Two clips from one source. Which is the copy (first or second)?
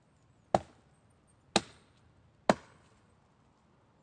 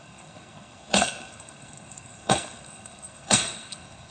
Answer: second